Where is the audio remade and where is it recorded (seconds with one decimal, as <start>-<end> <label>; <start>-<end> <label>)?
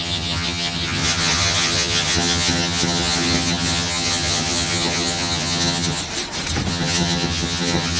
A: 0.0-6.0 remade; 6.0-6.7 recorded; 6.7-8.0 remade